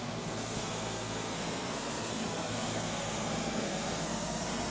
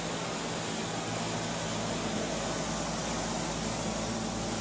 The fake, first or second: first